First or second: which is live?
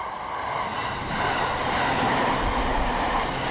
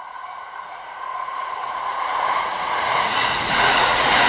first